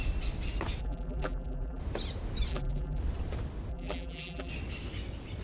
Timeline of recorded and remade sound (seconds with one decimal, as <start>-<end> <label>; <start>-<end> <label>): 0.0-0.8 recorded; 0.8-1.8 remade; 1.8-2.5 recorded; 2.5-3.0 remade; 3.0-3.7 recorded; 3.7-4.5 remade; 4.5-5.4 recorded